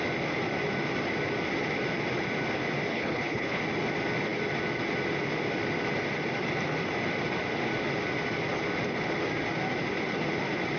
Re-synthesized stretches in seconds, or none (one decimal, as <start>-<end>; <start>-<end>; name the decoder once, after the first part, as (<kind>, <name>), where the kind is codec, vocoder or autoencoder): 2.9-3.6 (codec, HILCodec)